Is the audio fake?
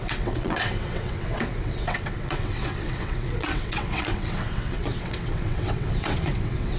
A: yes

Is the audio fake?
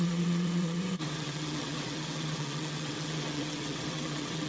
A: yes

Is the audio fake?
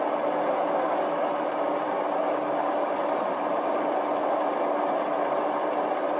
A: no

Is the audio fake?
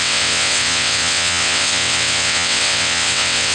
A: yes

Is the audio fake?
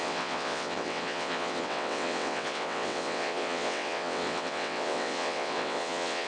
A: yes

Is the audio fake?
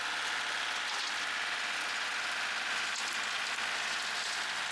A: no